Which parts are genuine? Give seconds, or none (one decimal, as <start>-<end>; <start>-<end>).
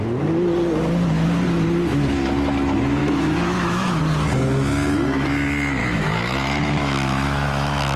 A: 0.0-3.0; 4.0-5.8